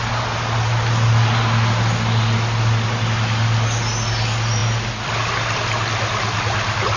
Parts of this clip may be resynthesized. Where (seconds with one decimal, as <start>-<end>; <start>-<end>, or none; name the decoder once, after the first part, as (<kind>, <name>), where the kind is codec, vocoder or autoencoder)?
none